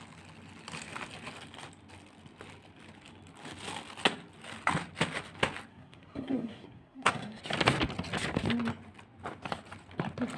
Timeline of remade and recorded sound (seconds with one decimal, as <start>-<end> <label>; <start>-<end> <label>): 0.0-5.7 recorded; 5.7-7.4 remade; 7.4-10.4 recorded